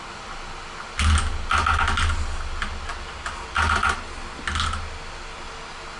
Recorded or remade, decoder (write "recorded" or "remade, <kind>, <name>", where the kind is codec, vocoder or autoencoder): recorded